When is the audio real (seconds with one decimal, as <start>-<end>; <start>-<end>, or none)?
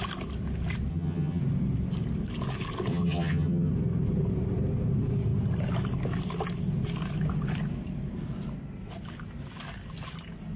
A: 0.0-0.9; 1.4-2.9; 3.7-10.6